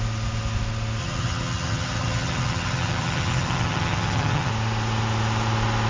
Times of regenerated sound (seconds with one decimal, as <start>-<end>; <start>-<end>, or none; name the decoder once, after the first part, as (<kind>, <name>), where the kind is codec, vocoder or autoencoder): 1.0-4.5 (vocoder, HiFi-GAN)